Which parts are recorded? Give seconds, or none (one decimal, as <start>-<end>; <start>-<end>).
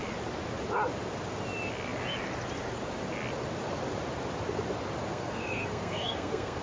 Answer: 0.0-5.1